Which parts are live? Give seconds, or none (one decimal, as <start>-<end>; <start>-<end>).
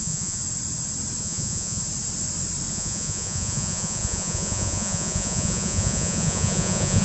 0.4-1.2; 1.8-2.7